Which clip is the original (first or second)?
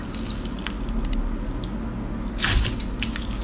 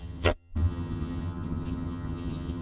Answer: first